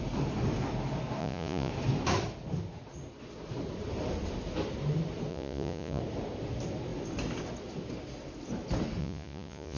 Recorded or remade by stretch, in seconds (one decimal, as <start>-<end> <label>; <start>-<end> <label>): 0.0-1.2 recorded; 1.2-1.7 remade; 1.7-5.3 recorded; 5.3-6.0 remade; 6.0-9.0 recorded; 9.0-9.8 remade